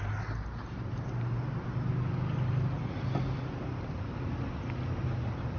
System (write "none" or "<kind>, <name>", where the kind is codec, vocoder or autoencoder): none